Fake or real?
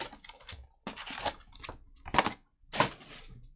real